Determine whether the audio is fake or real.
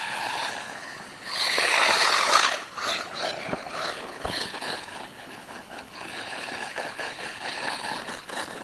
fake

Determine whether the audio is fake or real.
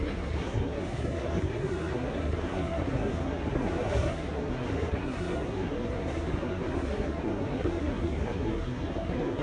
fake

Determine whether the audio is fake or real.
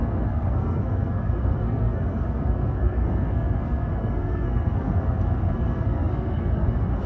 fake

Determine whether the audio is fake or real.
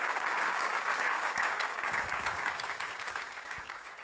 fake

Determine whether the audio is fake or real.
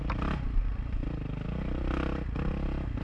real